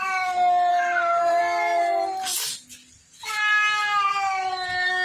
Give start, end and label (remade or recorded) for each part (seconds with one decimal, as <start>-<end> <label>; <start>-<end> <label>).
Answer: 0.0-0.7 recorded; 0.7-1.4 remade; 1.4-5.0 recorded